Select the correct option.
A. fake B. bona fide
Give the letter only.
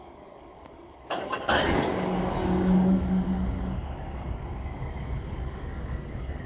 A